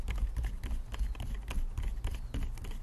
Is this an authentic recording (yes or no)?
yes